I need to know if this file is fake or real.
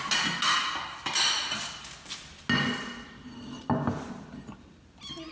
real